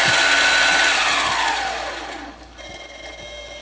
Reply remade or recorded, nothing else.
recorded